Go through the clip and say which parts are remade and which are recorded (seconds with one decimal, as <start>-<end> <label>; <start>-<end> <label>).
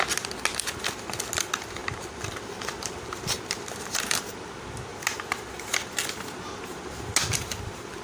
0.0-1.8 recorded; 1.8-4.2 remade; 4.2-8.0 recorded